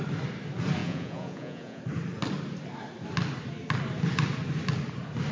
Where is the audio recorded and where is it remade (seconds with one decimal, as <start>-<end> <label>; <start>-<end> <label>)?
0.0-0.8 recorded; 0.8-1.8 remade; 1.8-5.3 recorded